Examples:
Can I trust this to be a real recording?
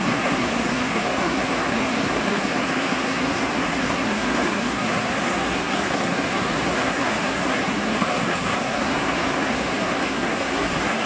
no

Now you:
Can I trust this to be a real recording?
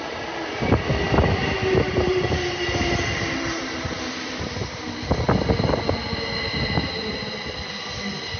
yes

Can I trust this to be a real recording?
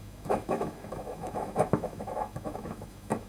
no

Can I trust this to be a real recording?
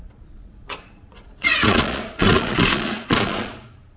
no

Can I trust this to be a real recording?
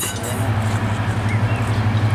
yes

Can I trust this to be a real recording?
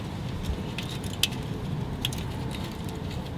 yes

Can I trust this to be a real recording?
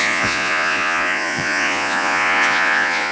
no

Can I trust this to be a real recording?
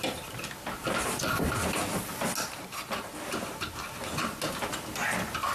yes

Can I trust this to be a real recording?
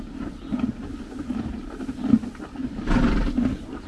yes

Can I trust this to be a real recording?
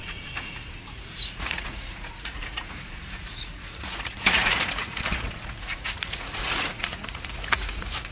no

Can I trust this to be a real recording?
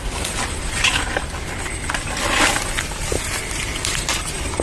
yes